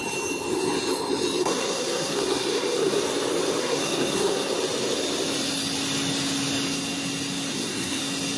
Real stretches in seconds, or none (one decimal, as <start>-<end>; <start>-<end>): 0.0-1.4; 3.0-3.6; 4.5-7.5; 8.0-8.4